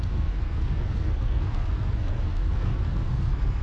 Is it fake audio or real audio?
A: fake